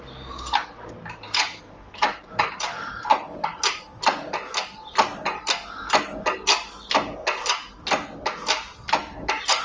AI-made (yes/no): no